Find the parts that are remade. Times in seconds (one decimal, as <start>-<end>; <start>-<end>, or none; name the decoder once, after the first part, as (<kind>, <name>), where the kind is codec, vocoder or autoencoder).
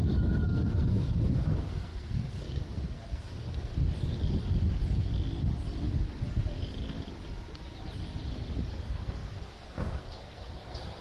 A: 0.0-3.7 (codec, SNAC); 8.7-11.0